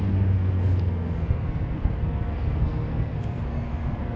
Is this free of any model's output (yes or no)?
no